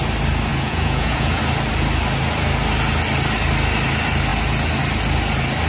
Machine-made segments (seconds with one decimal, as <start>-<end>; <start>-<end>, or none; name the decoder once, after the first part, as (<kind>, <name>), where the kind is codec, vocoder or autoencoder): 0.5-1.4 (vocoder, Vocos)